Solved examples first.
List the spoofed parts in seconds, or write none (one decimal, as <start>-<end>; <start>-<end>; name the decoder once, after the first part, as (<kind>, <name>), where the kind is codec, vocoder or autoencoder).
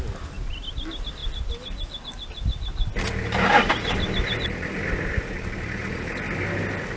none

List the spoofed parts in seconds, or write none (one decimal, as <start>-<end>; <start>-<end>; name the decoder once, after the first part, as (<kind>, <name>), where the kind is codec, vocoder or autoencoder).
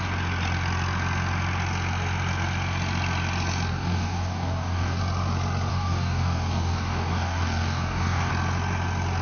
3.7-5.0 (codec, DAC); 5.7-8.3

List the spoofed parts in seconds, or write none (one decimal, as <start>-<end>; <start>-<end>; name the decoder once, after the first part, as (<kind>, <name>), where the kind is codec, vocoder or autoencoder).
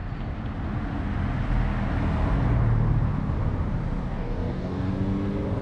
4.0-4.9 (codec, DAC)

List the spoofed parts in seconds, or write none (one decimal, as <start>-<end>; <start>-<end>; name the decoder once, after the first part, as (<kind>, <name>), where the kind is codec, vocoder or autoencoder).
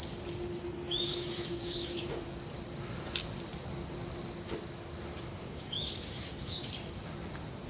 0.5-2.3 (codec, DAC); 5.3-6.7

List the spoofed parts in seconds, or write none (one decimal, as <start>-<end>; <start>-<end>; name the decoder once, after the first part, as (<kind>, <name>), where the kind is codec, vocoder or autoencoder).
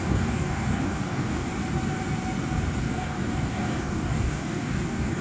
0.0-1.5 (codec, DAC); 2.8-5.2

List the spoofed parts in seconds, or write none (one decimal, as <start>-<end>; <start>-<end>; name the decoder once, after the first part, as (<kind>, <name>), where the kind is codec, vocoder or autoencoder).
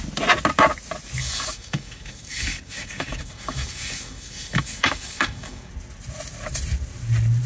1.2-5.7 (codec, DAC)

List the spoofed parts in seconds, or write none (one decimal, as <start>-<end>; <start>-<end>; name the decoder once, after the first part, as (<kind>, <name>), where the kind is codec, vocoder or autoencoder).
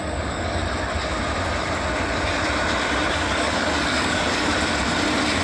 0.0-0.6 (codec, DAC); 3.1-4.5